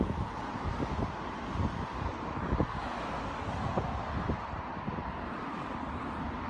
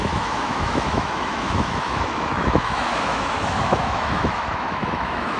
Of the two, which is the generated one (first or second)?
second